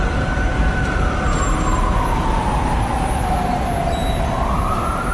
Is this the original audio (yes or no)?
yes